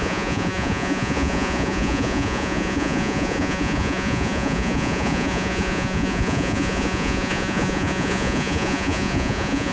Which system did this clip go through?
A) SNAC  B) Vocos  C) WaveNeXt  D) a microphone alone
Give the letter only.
B